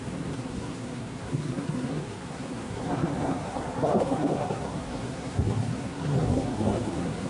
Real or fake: fake